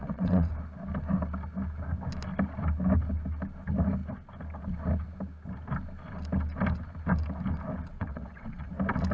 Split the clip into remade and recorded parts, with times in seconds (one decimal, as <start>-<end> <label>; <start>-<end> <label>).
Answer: 0.0-0.5 remade; 0.5-7.9 recorded; 7.9-8.7 remade; 8.7-9.1 recorded